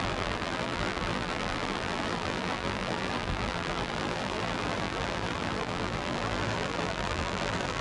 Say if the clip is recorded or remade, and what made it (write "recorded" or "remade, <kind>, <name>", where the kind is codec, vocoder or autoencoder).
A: remade, vocoder, BigVGAN v2